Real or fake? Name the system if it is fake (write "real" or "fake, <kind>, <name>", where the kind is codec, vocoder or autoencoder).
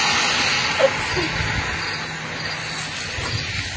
real